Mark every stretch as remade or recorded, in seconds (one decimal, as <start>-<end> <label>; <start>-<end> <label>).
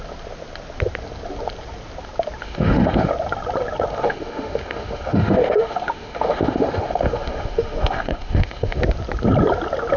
0.0-2.4 recorded; 2.4-3.1 remade; 3.1-3.9 recorded; 3.9-8.8 remade; 8.8-10.0 recorded